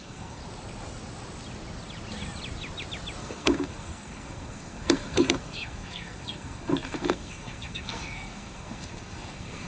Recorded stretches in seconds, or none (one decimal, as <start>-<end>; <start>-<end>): 0.4-3.2